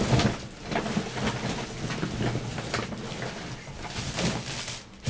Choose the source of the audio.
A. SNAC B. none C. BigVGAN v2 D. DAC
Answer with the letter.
B